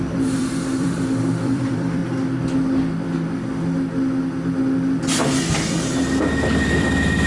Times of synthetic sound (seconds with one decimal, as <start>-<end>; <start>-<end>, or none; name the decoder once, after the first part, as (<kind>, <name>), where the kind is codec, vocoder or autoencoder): 0.0-2.0 (vocoder, BigVGAN v2); 6.4-7.3